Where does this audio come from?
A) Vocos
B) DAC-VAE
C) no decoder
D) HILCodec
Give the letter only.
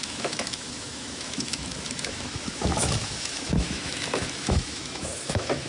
B